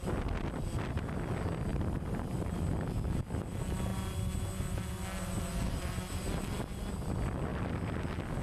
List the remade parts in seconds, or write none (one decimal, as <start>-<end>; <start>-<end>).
1.7-2.6